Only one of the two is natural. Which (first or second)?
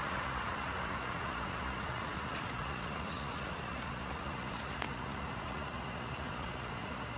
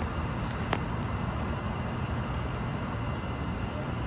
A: second